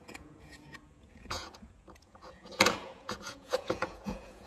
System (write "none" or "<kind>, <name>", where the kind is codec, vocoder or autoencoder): vocoder, Vocos